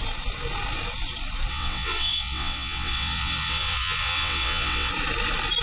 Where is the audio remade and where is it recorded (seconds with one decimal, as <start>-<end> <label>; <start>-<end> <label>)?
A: 0.0-1.5 recorded; 1.5-4.9 remade; 4.9-5.6 recorded